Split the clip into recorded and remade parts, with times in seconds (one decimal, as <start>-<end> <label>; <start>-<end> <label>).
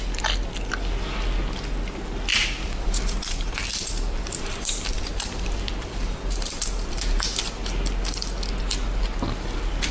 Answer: 0.0-2.3 recorded; 2.3-7.2 remade; 7.2-9.9 recorded